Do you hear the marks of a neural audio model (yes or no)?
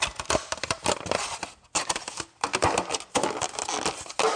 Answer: no